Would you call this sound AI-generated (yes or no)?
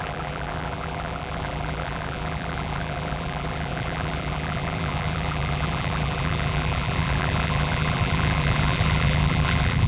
yes